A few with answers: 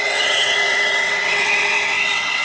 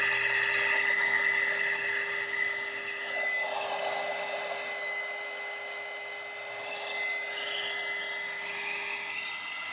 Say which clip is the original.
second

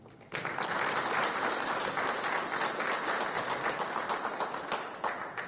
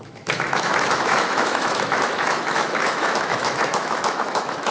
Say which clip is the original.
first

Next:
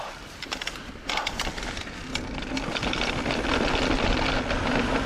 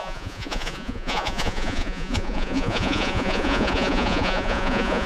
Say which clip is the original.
first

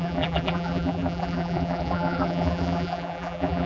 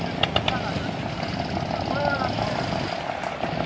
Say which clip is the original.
second